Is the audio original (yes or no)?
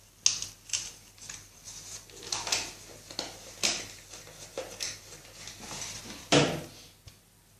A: yes